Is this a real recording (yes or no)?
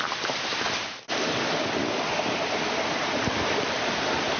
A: yes